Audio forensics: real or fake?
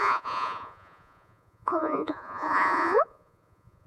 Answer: fake